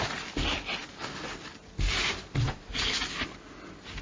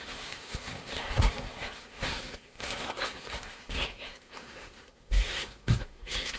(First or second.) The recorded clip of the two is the first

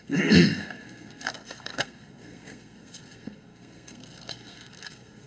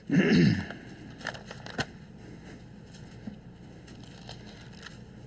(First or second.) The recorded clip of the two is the second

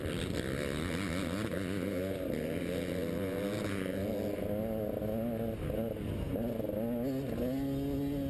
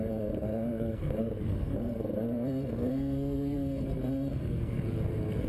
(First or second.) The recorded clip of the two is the first